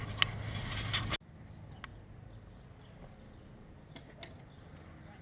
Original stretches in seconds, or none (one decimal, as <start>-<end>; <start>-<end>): 0.0-5.2